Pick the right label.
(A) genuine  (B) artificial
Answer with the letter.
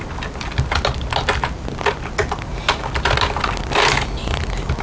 A